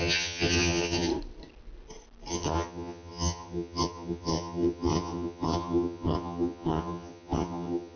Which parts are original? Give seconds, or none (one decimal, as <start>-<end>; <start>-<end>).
1.1-2.3